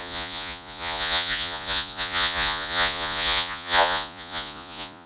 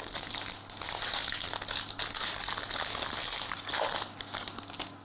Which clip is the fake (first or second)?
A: first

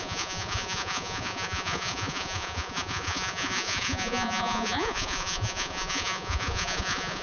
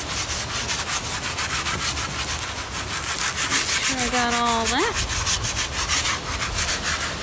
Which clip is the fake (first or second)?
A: first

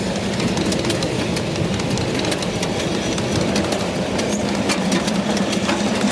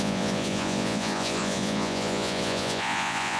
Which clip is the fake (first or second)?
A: second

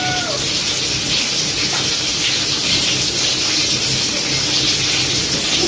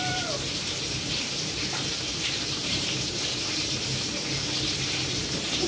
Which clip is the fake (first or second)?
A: second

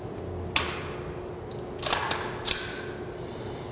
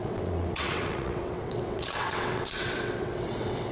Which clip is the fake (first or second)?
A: second